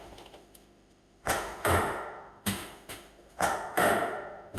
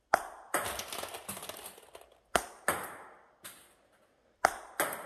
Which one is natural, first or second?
second